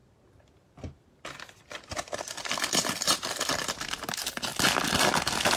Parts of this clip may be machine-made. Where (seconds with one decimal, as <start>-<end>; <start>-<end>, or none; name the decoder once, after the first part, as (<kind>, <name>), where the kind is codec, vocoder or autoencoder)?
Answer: none